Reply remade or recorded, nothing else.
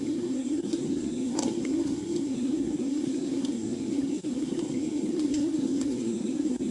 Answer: remade